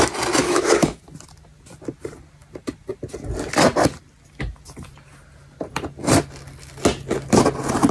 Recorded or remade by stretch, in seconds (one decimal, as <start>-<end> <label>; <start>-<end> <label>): 0.0-0.4 recorded; 0.4-1.0 remade; 1.0-7.9 recorded